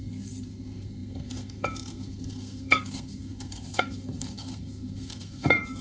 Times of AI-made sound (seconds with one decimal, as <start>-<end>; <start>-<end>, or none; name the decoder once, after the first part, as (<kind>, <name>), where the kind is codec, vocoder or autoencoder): 0.0-5.8 (codec, SNAC)